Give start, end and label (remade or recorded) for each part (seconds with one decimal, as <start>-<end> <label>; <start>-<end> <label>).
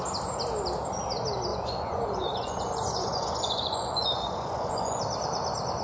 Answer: 0.0-1.5 recorded; 1.5-5.0 remade; 5.0-5.8 recorded